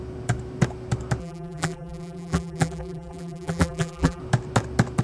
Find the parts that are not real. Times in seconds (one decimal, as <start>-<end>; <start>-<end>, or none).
1.2-4.2